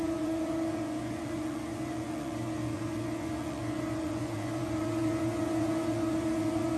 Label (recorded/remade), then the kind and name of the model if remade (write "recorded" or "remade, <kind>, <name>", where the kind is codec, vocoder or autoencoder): remade, vocoder, Vocos